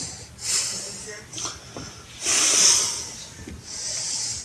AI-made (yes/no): no